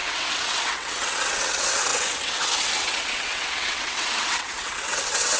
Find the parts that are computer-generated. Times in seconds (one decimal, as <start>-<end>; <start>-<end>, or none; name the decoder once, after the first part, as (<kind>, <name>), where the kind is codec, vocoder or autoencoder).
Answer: 0.0-5.4 (vocoder, WaveNeXt)